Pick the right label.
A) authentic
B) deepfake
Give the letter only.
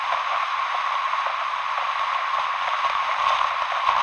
A